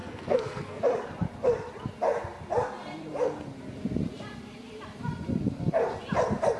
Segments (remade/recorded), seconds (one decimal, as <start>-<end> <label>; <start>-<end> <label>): 0.0-0.8 remade; 0.8-6.6 recorded